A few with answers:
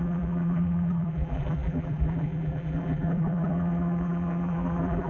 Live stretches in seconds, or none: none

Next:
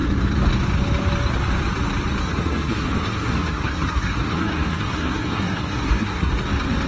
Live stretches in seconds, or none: 0.0-2.2; 6.3-6.9

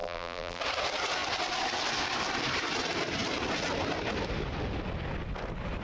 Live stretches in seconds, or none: 0.6-5.8

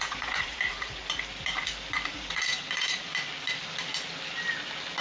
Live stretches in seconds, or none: 1.0-2.1; 3.1-5.0